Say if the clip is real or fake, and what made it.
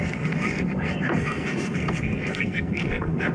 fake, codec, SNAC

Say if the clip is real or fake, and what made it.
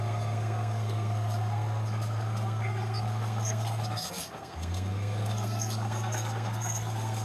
fake, codec, SNAC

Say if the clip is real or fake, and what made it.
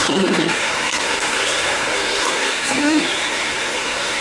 fake, codec, SNAC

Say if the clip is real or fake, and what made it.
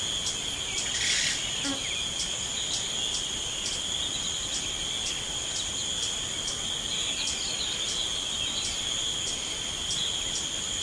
real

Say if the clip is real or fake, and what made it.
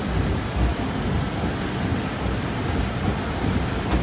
real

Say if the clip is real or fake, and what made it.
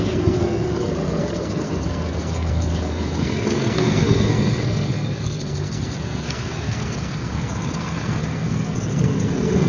fake, codec, SNAC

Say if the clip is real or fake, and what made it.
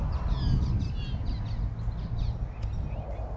real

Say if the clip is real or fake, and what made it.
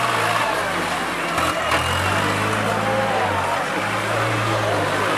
real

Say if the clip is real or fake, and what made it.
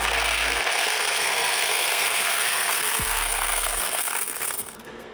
fake, codec, SNAC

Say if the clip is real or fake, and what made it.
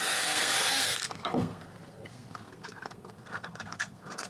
fake, codec, SNAC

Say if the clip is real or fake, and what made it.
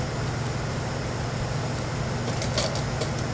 real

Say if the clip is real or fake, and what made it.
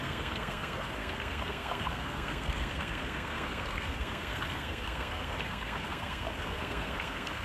fake, codec, SNAC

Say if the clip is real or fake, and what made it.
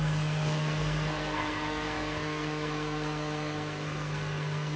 fake, codec, SNAC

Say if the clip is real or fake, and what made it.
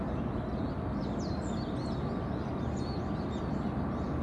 real